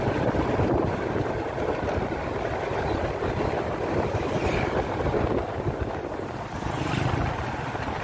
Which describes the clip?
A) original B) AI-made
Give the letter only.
A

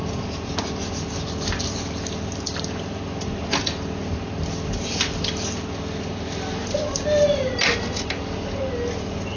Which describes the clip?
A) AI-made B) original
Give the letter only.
B